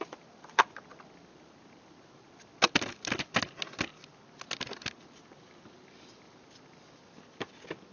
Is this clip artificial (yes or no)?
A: no